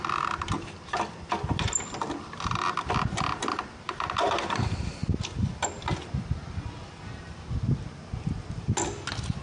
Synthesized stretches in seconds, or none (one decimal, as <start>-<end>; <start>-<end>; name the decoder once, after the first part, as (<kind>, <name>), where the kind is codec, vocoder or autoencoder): none